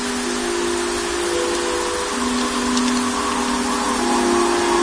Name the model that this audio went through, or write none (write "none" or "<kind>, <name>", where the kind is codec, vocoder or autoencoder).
none